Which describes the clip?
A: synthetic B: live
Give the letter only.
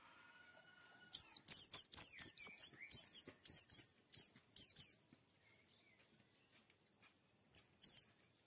B